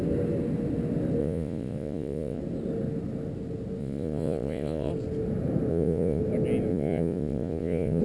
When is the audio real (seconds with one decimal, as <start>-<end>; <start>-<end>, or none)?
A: 0.0-1.2; 2.4-3.8; 4.9-5.7; 6.2-6.7